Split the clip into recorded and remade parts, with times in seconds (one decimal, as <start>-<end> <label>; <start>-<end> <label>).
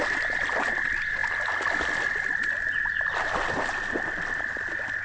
0.0-5.0 recorded